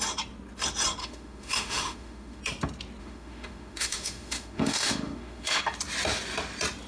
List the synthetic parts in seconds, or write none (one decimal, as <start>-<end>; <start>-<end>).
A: 1.0-2.4; 3.0-5.6